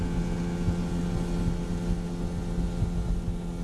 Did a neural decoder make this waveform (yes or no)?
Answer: no